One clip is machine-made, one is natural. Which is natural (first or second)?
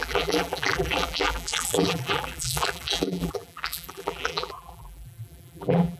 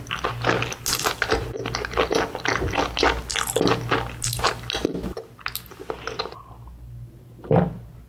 second